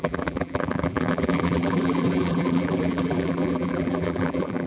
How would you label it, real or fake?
fake